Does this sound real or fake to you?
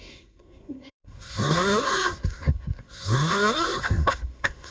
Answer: fake